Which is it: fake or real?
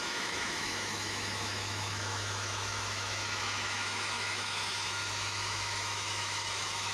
fake